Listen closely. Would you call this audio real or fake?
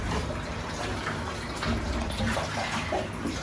real